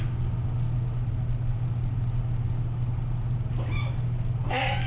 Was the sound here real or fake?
real